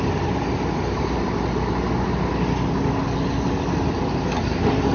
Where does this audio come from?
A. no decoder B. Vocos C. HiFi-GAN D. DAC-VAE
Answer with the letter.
A